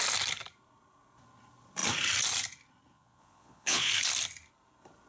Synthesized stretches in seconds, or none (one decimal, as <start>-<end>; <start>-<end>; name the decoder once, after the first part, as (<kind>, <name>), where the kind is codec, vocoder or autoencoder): 2.9-3.9 (vocoder, Vocos)

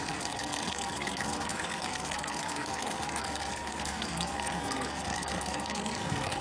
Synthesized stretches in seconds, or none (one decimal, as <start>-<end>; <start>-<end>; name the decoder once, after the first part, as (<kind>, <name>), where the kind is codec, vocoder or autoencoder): 0.0-6.4 (codec, SNAC)

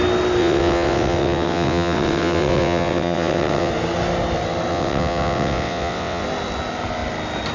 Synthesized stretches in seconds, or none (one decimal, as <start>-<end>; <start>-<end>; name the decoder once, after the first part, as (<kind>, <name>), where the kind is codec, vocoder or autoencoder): 0.4-3.7 (vocoder, WaveNeXt); 4.7-6.2

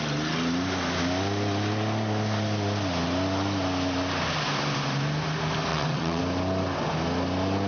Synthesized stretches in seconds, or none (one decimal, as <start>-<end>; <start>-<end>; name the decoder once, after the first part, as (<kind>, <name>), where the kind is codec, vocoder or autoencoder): 5.7-6.2 (vocoder, WaveNeXt)